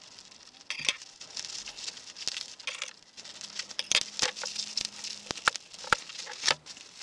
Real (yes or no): yes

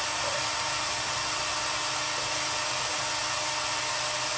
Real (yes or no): yes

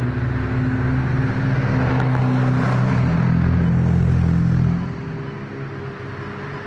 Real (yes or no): yes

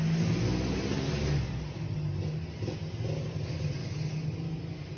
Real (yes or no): yes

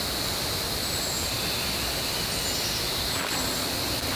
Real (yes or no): yes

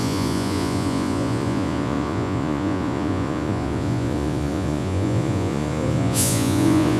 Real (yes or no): no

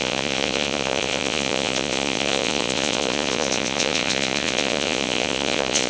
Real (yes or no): no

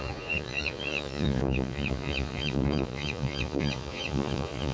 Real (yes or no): no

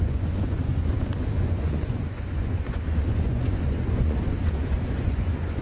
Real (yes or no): no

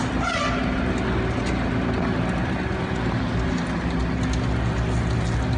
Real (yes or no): yes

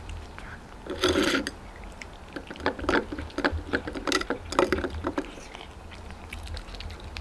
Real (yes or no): yes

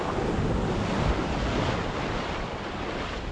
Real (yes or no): yes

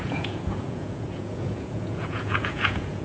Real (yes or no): no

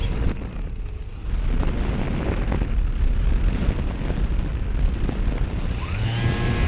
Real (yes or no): yes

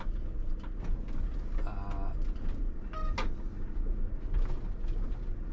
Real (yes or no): yes